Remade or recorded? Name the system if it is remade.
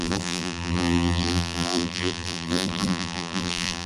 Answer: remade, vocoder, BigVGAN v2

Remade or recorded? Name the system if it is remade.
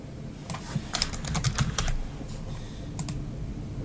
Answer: recorded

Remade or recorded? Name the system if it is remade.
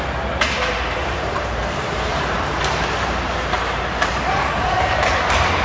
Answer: remade, vocoder, BigVGAN v2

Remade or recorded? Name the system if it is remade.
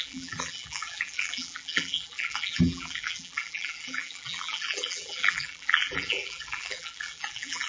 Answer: remade, vocoder, BigVGAN v2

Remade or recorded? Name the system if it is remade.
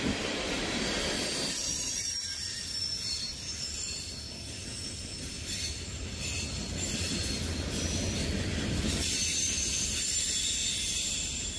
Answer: remade, vocoder, BigVGAN v2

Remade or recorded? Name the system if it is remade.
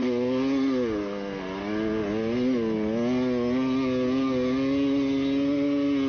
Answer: recorded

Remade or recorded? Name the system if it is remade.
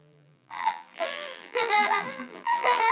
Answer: remade, vocoder, BigVGAN v2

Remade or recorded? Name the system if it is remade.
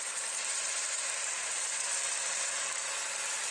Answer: remade, vocoder, BigVGAN v2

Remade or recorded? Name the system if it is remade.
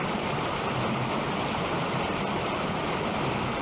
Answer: remade, vocoder, BigVGAN v2